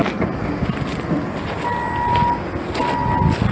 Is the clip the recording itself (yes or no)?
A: yes